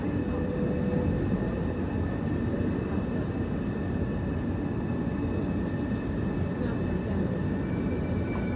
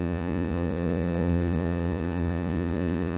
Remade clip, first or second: second